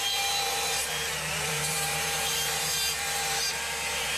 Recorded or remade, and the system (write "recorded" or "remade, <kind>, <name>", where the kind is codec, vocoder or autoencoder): remade, vocoder, BigVGAN v2